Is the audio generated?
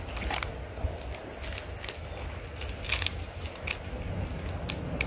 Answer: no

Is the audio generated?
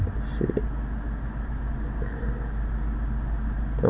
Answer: no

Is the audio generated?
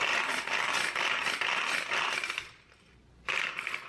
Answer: no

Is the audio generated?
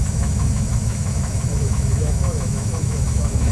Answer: yes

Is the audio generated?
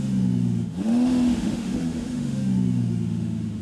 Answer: yes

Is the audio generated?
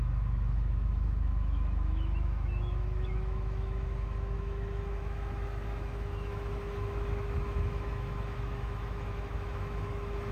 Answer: yes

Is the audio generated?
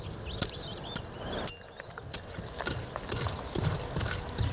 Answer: no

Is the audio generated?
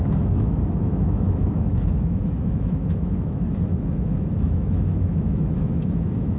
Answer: yes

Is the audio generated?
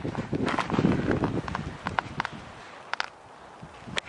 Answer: no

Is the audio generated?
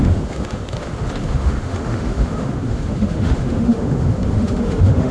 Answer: yes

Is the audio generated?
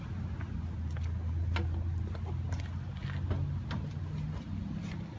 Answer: no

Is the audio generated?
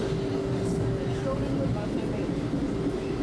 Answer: no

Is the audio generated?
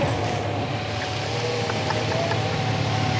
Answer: no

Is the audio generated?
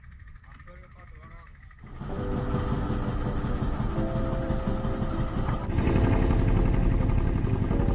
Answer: no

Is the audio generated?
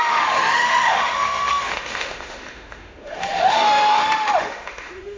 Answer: yes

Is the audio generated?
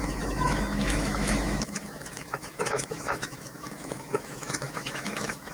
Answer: yes